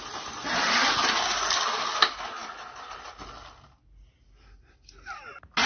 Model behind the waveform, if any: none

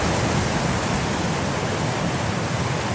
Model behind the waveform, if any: none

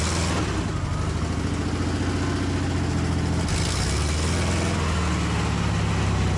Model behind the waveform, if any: none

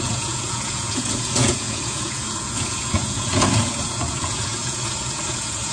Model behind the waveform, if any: vocoder, Vocos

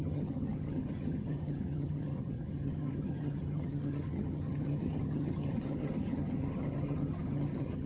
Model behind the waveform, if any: vocoder, HiFi-GAN